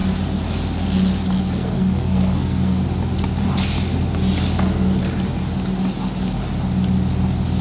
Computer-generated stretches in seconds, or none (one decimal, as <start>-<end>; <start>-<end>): 1.4-2.8